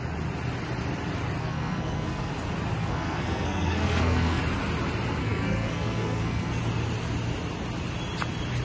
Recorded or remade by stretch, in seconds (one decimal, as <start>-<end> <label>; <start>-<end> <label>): 0.0-1.4 recorded; 1.4-2.3 remade; 2.3-2.8 recorded; 2.8-4.4 remade; 4.4-5.2 recorded; 5.2-6.6 remade; 6.6-8.6 recorded